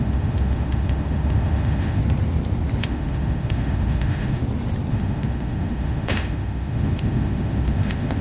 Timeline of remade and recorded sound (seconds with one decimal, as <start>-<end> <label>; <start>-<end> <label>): 0.0-2.0 remade; 2.0-2.8 recorded; 2.8-4.4 remade; 4.4-4.9 recorded; 4.9-8.2 remade